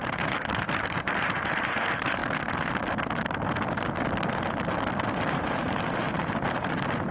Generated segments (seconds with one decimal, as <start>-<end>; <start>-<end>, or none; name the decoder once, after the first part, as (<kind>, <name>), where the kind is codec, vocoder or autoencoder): 0.0-2.2 (vocoder, BigVGAN v2); 5.3-7.1